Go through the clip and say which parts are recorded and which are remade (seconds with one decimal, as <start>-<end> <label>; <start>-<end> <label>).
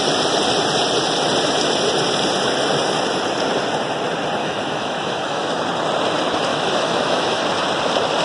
0.0-4.4 recorded; 4.4-5.6 remade; 5.6-6.5 recorded; 6.5-7.4 remade; 7.4-8.2 recorded